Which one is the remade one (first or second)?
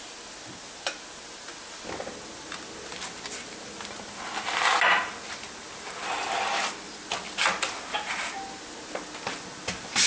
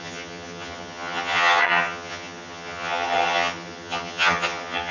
second